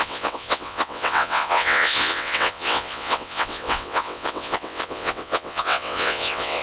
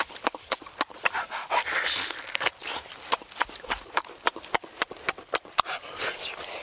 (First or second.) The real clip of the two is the second